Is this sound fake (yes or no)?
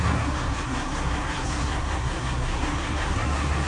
yes